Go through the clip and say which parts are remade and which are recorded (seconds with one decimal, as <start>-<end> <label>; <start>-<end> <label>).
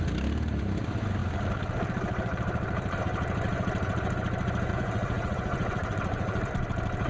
0.0-4.7 recorded; 4.7-6.5 remade; 6.5-7.1 recorded